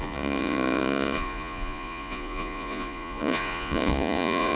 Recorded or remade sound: remade